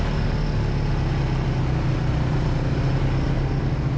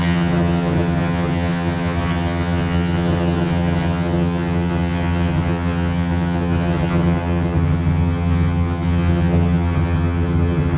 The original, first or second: first